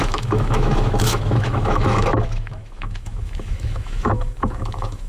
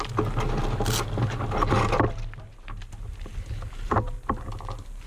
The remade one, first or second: first